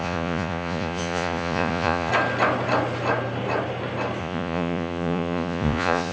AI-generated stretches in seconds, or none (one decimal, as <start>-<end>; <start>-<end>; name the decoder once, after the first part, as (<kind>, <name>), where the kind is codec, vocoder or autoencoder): 0.0-2.1 (vocoder, Vocos); 4.2-6.1